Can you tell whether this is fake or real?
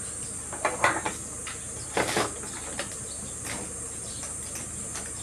real